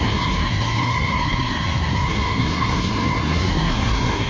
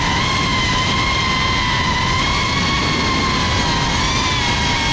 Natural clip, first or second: second